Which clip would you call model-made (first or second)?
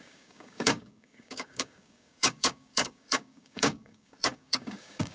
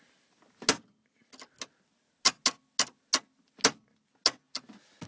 first